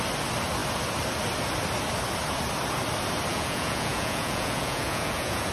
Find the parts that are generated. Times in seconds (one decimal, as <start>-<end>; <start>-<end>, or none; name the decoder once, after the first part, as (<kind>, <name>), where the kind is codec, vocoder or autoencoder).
3.3-5.5 (vocoder, Vocos)